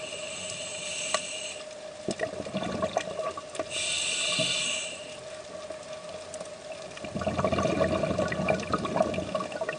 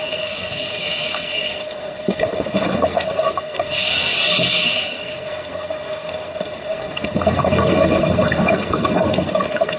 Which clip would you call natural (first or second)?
first